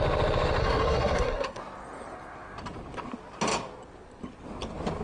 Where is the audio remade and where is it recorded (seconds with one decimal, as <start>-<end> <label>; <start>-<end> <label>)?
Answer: 0.0-0.6 recorded; 0.6-1.6 remade; 1.6-5.0 recorded